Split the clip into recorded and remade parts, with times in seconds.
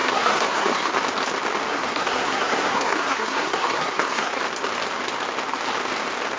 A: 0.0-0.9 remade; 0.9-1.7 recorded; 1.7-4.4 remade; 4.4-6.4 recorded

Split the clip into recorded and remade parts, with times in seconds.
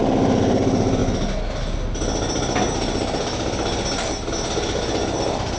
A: 0.0-5.6 recorded